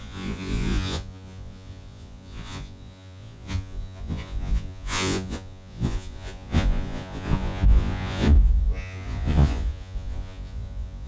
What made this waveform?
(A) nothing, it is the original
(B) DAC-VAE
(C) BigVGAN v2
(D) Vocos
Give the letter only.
D